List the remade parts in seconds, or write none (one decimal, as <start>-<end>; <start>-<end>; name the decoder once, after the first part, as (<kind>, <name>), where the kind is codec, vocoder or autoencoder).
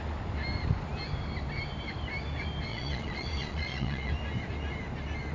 2.7-4.1 (vocoder, Vocos)